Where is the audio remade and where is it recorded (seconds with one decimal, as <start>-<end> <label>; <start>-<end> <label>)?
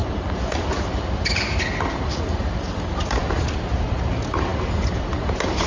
0.0-5.7 recorded